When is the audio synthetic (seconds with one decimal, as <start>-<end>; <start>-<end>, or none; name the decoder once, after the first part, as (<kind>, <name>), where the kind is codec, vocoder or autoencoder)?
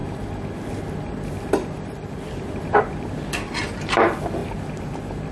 2.8-5.3 (vocoder, BigVGAN v2)